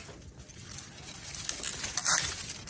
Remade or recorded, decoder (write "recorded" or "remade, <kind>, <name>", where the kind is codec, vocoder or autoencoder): recorded